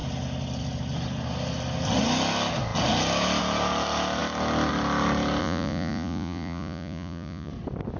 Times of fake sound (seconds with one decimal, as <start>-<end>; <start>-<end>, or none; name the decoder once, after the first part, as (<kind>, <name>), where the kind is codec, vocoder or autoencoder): 5.4-7.5 (vocoder, Vocos)

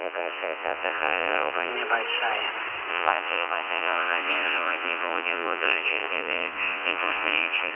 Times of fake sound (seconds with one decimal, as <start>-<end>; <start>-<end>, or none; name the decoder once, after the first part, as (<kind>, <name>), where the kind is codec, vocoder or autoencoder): 0.0-1.7 (vocoder, Vocos); 2.9-7.7

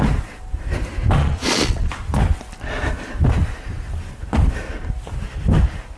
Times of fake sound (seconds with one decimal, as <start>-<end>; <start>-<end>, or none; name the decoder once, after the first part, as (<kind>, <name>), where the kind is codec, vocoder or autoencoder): 1.2-1.9 (vocoder, Vocos)

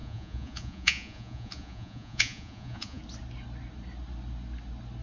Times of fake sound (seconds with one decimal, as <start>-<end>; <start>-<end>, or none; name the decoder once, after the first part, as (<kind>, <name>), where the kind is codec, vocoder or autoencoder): 0.0-3.0 (vocoder, Vocos)

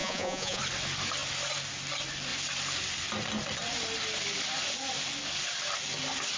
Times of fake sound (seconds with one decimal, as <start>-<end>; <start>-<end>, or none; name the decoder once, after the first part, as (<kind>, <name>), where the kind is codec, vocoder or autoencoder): 0.0-0.6 (vocoder, Vocos)

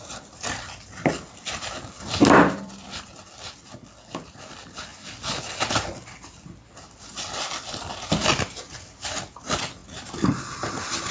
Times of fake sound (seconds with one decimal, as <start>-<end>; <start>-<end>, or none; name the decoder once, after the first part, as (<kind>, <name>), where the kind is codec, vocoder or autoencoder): none